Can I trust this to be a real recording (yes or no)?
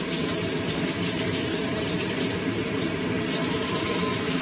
no